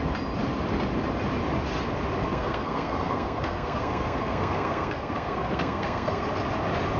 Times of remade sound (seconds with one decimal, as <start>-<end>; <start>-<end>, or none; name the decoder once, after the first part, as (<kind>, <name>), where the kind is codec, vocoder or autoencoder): 2.2-6.2 (codec, SNAC)